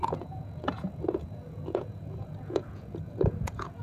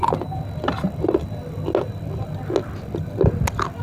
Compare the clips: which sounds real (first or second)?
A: second